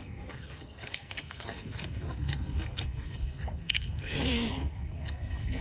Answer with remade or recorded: remade